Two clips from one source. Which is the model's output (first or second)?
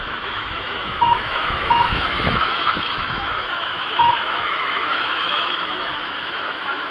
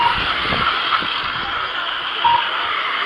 first